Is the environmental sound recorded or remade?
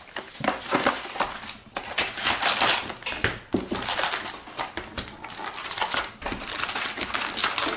recorded